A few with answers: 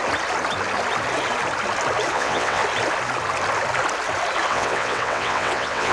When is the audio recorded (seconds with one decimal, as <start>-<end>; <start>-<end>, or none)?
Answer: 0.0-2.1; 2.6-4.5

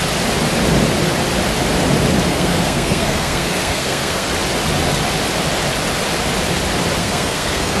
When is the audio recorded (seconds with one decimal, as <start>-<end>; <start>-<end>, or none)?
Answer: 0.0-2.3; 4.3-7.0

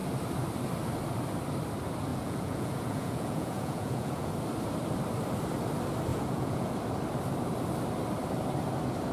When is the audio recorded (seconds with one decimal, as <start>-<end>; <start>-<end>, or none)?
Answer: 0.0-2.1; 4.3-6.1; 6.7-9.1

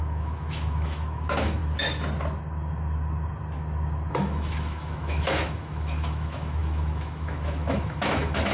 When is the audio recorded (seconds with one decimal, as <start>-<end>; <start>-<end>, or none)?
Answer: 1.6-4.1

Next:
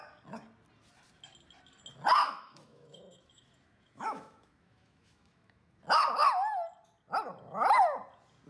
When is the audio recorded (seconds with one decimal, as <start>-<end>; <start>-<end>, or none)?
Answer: 0.0-2.2; 5.8-8.5

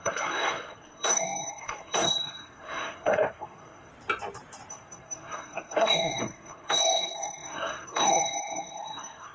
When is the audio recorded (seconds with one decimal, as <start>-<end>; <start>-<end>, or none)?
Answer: 3.9-4.7